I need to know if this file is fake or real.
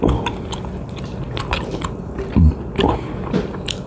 real